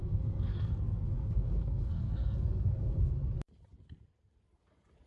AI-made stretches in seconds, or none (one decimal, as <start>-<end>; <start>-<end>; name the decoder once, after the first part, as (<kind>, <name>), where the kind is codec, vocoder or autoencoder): 0.0-3.1 (codec, SNAC)